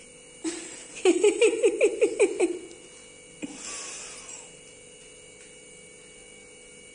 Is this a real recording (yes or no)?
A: yes